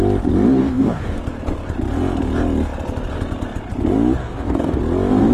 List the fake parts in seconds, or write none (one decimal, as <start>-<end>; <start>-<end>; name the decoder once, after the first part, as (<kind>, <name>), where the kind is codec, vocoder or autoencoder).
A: 0.6-1.2 (codec, DAC); 4.2-4.8